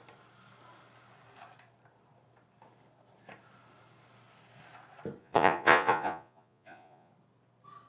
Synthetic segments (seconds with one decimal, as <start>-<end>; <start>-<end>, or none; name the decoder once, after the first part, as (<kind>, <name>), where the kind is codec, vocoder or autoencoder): 5.2-7.1 (vocoder, Vocos)